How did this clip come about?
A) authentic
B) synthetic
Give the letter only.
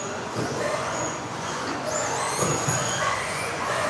B